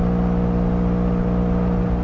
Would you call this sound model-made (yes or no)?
no